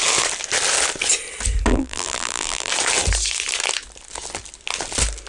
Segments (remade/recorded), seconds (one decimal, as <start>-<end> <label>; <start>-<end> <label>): 0.0-1.7 recorded; 1.7-2.7 remade; 2.7-5.3 recorded